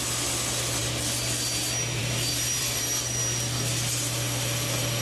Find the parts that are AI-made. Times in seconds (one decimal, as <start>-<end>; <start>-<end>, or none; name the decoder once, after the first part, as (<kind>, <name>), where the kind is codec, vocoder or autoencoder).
2.0-2.8 (vocoder, BigVGAN v2)